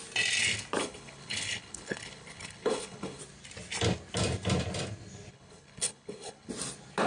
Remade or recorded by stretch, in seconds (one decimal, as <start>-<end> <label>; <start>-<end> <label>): 0.0-0.8 recorded; 0.8-3.2 remade; 3.2-5.3 recorded; 5.3-6.5 remade; 6.5-7.1 recorded